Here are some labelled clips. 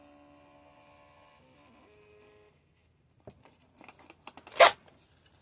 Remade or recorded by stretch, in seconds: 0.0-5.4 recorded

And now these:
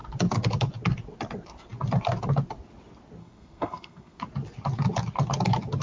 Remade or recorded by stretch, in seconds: 0.0-3.2 recorded; 3.2-4.2 remade; 4.2-5.8 recorded

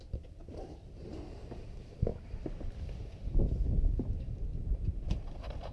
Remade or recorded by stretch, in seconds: 0.0-2.1 recorded; 2.1-3.0 remade; 3.0-4.5 recorded; 4.5-5.0 remade; 5.0-5.7 recorded

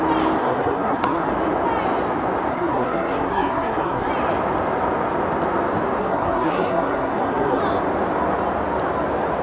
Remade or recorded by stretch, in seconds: 0.0-0.4 recorded; 0.4-1.3 remade; 1.3-2.5 recorded; 2.5-4.1 remade; 4.1-6.0 recorded; 6.0-7.6 remade; 7.6-9.4 recorded

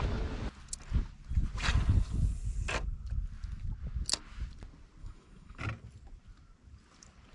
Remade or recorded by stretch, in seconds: 0.0-5.0 recorded; 5.0-5.6 remade; 5.6-7.3 recorded